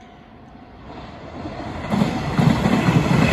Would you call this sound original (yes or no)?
no